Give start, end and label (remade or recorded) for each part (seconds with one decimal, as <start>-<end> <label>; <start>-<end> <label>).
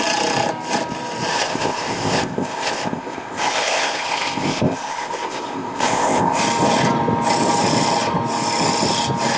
0.0-1.3 recorded; 1.3-6.4 remade; 6.4-9.4 recorded